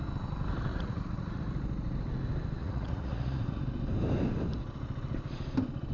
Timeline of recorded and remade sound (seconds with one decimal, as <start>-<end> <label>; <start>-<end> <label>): 0.0-0.7 recorded; 0.7-1.4 remade; 1.4-2.6 recorded; 2.6-3.6 remade; 3.6-5.9 recorded